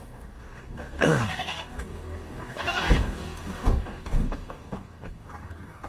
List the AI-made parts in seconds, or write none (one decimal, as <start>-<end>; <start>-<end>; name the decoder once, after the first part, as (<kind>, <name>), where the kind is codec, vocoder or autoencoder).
0.0-5.9 (codec, DAC)